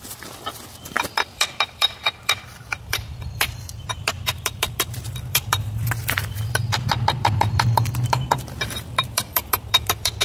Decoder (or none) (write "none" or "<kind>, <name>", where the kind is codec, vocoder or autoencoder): vocoder, BigVGAN v2